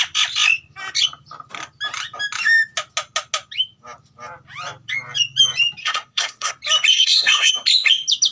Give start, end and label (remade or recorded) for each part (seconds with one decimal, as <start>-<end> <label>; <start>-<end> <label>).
0.0-5.8 recorded; 5.8-6.5 remade; 6.5-6.9 recorded; 6.9-7.5 remade; 7.5-8.3 recorded